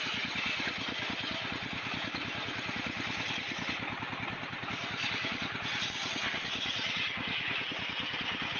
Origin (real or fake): real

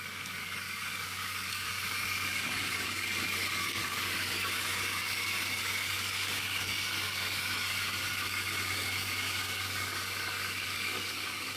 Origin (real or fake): fake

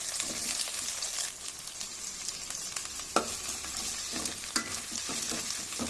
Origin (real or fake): real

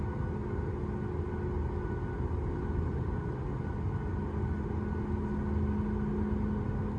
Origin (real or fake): real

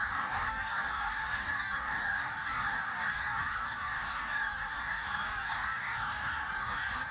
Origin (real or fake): fake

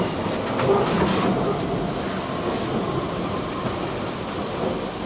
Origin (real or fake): real